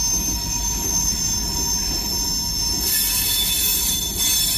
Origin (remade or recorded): recorded